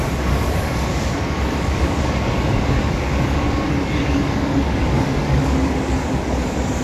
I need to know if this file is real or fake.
fake